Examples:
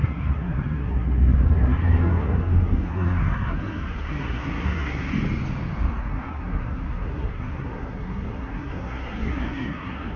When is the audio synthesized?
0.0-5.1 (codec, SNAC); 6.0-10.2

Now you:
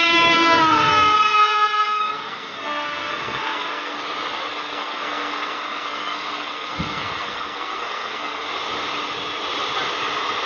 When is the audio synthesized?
0.0-4.0 (codec, SNAC); 4.5-8.5